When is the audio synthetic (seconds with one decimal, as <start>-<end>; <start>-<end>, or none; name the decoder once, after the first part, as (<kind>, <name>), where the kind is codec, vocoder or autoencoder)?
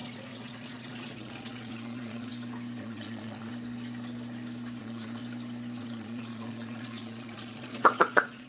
0.0-2.3 (vocoder, Vocos); 2.8-3.5; 4.8-5.2; 5.8-8.5